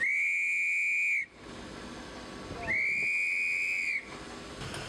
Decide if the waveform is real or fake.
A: real